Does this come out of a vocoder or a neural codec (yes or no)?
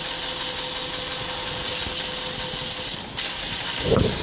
no